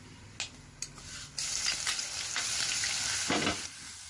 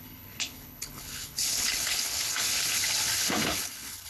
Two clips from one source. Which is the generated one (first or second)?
second